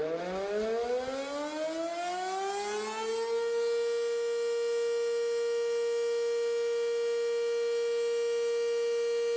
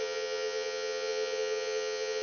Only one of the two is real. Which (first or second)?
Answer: first